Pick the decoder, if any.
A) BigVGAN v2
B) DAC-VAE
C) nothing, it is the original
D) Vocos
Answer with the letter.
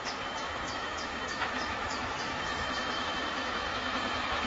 B